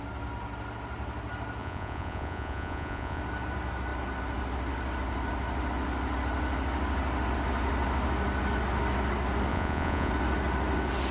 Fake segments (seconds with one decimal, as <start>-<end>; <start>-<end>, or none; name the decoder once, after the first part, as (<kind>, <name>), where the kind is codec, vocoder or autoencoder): 1.6-3.2 (vocoder, Vocos); 9.5-10.1